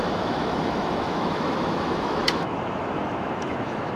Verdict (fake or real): fake